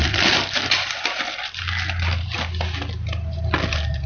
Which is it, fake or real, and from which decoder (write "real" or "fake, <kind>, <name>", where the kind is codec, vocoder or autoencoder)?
real